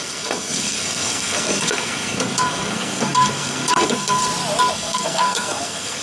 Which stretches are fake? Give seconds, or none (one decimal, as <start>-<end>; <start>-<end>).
0.0-4.2; 4.7-6.0